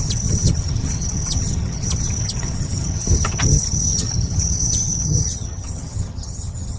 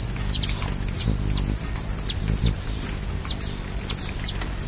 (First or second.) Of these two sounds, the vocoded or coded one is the first